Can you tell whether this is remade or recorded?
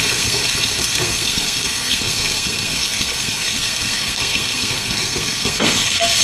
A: remade